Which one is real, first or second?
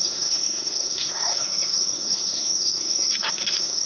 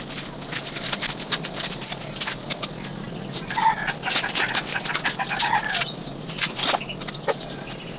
second